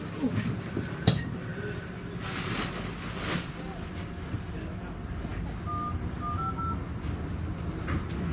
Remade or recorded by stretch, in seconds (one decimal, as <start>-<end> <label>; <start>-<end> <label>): 0.0-8.3 recorded